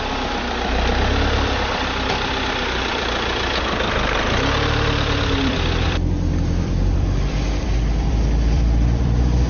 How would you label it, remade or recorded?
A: remade